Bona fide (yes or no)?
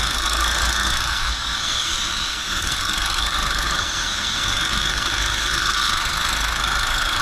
no